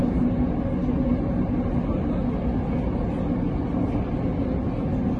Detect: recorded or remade recorded